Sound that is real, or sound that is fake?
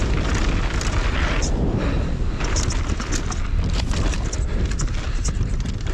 real